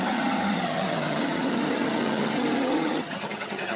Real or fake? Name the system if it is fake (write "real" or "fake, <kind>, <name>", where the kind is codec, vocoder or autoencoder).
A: fake, vocoder, HiFi-GAN